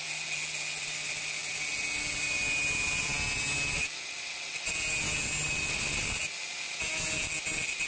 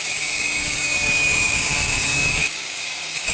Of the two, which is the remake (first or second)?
second